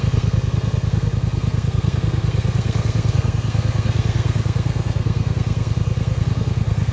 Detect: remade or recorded remade